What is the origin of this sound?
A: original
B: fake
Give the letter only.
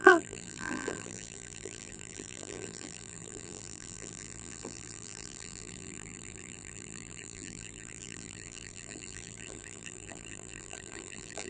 B